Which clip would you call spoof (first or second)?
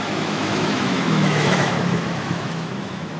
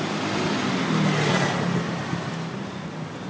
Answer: first